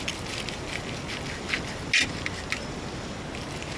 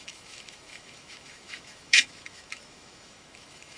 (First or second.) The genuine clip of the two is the first